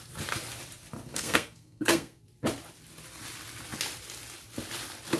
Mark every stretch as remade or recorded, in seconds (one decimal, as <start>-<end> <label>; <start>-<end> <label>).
0.0-1.1 recorded; 1.1-2.2 remade; 2.2-5.2 recorded